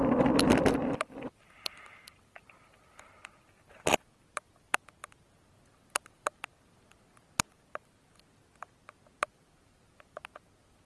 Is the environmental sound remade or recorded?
recorded